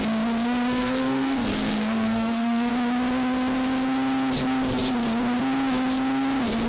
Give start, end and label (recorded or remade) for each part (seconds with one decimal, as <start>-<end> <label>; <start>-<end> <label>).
0.0-0.8 recorded; 0.8-2.7 remade; 2.7-6.7 recorded